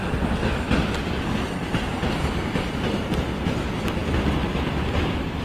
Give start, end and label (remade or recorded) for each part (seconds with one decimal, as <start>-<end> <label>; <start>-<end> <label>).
0.0-5.4 recorded